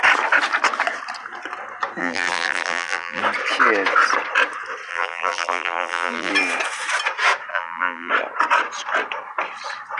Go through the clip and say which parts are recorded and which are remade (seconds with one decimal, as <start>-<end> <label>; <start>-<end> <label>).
0.0-2.0 recorded; 2.0-3.2 remade; 3.2-4.9 recorded; 4.9-6.3 remade; 6.3-7.5 recorded; 7.5-8.1 remade; 8.1-10.0 recorded